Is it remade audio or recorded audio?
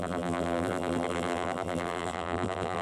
remade